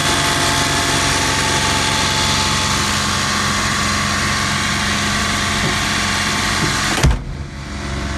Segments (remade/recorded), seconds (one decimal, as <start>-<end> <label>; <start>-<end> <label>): 0.0-8.2 recorded